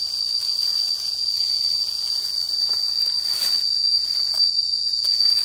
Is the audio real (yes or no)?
yes